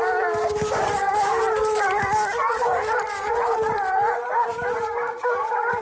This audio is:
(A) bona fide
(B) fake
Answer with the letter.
A